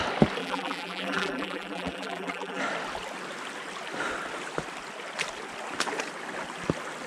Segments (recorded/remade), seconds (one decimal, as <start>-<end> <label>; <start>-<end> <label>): 0.0-0.4 recorded; 0.4-2.6 remade; 2.6-7.1 recorded